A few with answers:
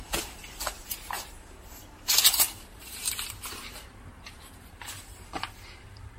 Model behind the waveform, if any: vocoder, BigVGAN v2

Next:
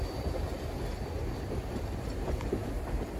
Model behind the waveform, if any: none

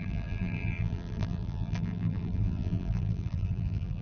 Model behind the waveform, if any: vocoder, BigVGAN v2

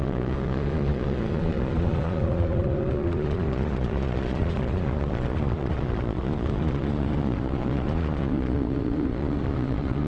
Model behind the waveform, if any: vocoder, Vocos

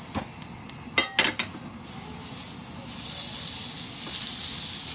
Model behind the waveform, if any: none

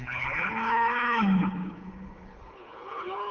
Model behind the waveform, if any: codec, HILCodec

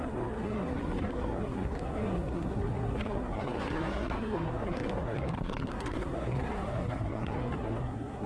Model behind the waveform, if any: codec, SNAC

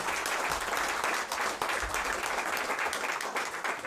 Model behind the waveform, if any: none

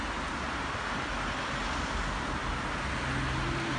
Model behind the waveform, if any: none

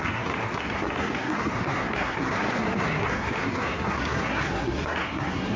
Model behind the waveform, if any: codec, SNAC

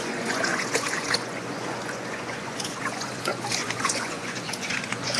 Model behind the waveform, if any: vocoder, Vocos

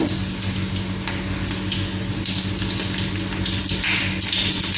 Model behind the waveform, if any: none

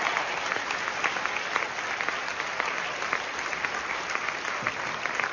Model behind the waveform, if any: none